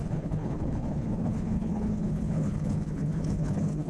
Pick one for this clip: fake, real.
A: fake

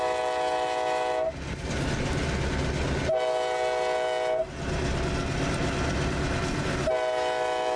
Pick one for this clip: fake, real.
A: real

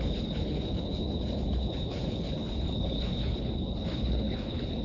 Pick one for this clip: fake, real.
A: fake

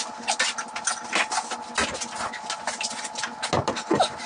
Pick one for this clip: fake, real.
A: real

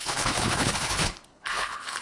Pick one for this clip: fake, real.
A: fake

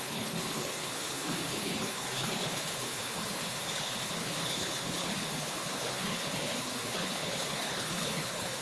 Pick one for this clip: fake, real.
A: fake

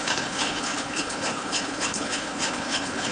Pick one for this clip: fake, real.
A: fake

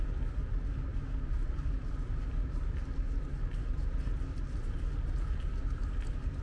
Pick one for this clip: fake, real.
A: real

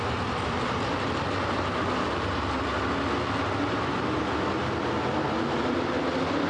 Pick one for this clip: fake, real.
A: real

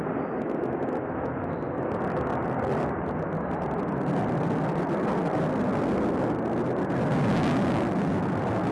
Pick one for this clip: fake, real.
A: real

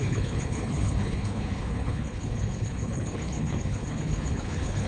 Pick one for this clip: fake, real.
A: fake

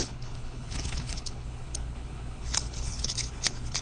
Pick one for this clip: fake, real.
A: fake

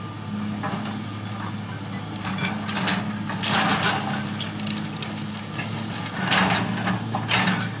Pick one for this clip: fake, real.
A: real